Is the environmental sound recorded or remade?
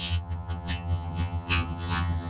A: remade